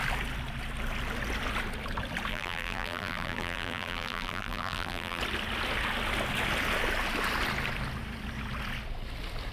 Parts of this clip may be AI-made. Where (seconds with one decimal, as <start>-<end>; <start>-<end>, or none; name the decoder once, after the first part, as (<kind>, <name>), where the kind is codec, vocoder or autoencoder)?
2.3-5.2 (vocoder, BigVGAN v2)